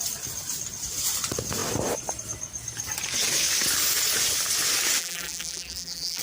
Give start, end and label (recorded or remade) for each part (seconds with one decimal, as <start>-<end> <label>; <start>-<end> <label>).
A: 0.0-5.0 recorded; 5.0-6.2 remade